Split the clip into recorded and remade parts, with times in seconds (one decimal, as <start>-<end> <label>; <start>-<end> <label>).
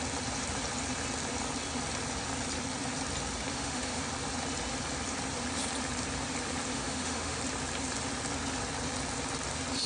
0.0-3.5 recorded; 3.5-4.0 remade; 4.0-6.7 recorded; 6.7-7.4 remade; 7.4-9.9 recorded